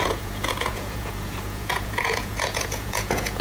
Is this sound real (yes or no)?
no